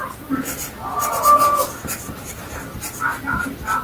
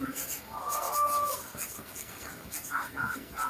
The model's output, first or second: second